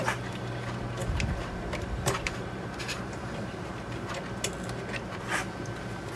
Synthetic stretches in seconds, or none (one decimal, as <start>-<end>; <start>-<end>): 1.0-4.2